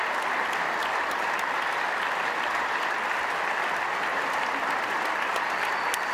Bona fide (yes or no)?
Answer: yes